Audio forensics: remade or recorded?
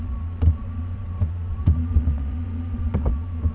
remade